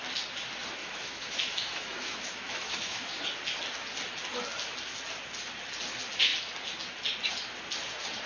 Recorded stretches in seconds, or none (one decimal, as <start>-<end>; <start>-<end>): 0.0-0.8; 3.2-8.3